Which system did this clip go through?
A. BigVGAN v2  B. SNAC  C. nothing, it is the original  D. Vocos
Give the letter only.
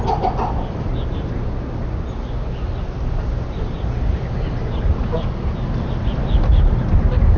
C